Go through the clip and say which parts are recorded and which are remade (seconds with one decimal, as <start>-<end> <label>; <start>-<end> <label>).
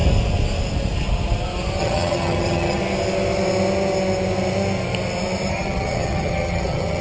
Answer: 0.0-1.8 recorded; 1.8-2.8 remade; 2.8-5.5 recorded; 5.5-7.0 remade